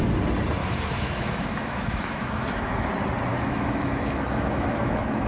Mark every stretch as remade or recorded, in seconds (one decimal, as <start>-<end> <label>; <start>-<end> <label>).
0.0-0.6 recorded; 0.6-2.9 remade; 2.9-3.3 recorded; 3.3-5.3 remade